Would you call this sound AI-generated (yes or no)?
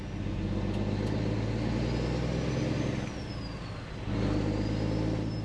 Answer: no